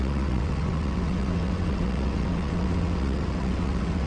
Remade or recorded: remade